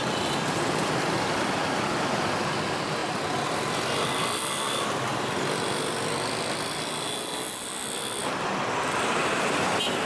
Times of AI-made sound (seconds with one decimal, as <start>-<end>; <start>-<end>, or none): none